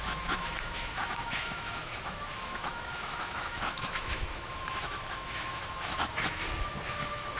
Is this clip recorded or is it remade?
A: remade